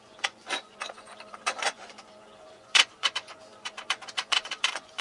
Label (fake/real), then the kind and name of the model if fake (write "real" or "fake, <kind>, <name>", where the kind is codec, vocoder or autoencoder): fake, vocoder, Vocos